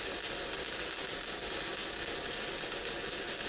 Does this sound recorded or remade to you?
recorded